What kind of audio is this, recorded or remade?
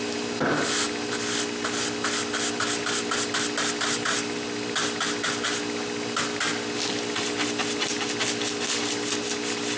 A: recorded